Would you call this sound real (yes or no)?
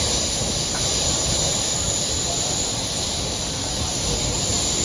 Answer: yes